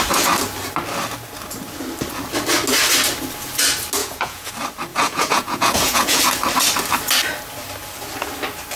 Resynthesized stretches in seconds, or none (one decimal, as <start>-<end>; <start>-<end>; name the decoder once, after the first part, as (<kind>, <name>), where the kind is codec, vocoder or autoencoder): 4.0-4.5 (vocoder, Vocos); 4.9-6.2